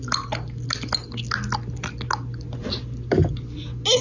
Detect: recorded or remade recorded